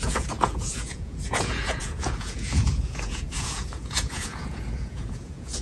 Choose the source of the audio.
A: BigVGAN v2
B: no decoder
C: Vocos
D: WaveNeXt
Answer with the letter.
C